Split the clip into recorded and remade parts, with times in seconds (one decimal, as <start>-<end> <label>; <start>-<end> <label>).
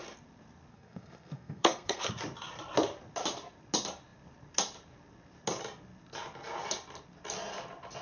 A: 0.0-0.7 recorded; 0.7-2.1 remade; 2.1-8.0 recorded